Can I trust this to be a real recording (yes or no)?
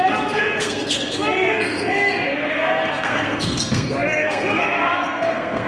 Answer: no